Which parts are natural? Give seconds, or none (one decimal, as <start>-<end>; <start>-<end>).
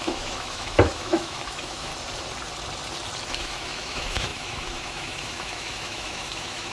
1.9-3.3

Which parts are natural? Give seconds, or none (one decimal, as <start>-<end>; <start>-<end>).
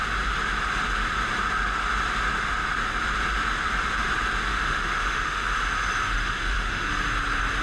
0.0-4.5; 5.5-6.2; 6.9-7.6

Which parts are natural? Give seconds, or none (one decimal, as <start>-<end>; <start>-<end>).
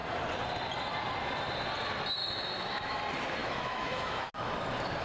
0.0-2.2; 3.0-3.4; 4.3-5.0